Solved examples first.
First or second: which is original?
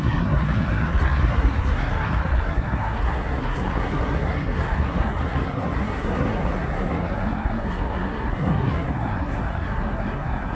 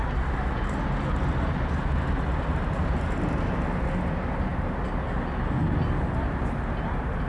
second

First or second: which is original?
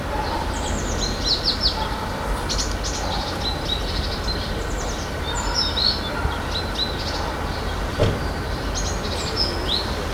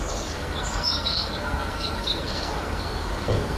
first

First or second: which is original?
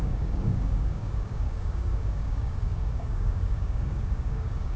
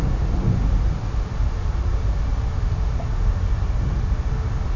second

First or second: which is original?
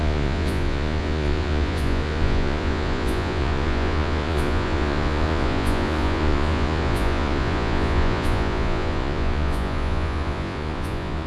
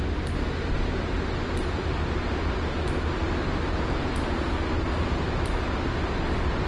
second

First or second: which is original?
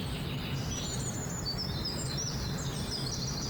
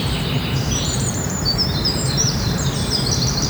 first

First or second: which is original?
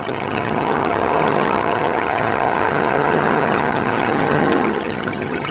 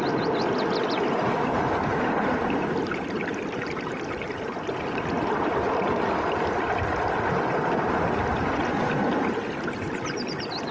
second